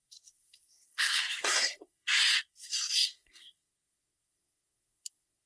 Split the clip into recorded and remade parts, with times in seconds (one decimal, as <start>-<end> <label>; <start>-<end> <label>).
0.0-5.5 remade